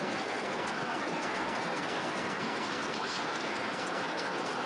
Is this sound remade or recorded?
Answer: remade